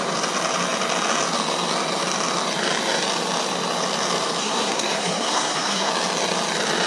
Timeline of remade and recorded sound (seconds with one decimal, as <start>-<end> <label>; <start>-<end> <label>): 0.0-4.4 recorded; 4.4-5.9 remade; 5.9-6.9 recorded